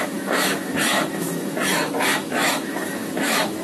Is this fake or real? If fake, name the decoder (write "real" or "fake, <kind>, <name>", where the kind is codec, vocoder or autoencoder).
fake, autoencoder, DAC-VAE